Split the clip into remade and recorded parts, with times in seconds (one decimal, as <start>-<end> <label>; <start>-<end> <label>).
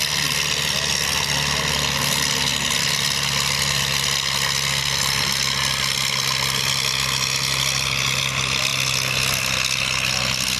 0.0-10.6 recorded